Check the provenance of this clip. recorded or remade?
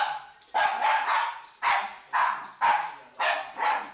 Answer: recorded